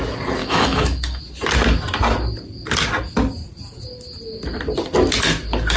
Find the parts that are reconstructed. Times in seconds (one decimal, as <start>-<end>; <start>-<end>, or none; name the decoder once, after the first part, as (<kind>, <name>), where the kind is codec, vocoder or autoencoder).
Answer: 0.4-1.2 (autoencoder, DAC-VAE)